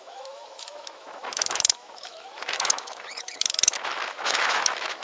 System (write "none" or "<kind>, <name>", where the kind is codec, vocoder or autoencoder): autoencoder, DAC-VAE